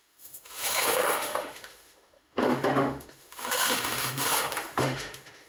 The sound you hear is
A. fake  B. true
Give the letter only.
A